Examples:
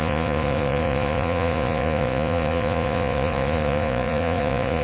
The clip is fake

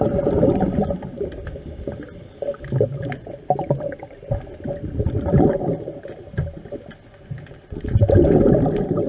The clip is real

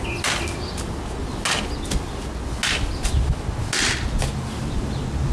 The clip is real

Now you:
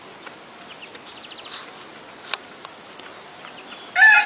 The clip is real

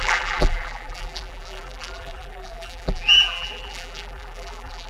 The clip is fake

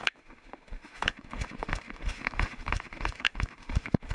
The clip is fake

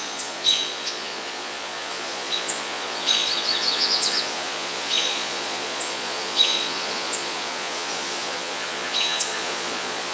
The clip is fake